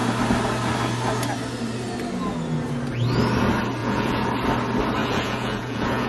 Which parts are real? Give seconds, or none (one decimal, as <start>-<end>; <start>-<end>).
0.0-3.8; 4.3-5.0